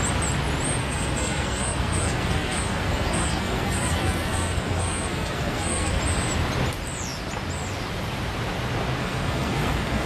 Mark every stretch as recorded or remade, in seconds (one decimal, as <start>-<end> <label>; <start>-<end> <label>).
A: 0.0-0.8 recorded; 0.8-6.0 remade; 6.0-9.0 recorded; 9.0-10.1 remade